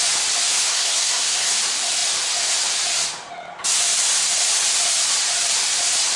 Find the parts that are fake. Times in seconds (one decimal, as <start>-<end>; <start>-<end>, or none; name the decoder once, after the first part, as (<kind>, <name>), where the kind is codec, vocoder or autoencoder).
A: 0.5-1.6 (codec, SNAC)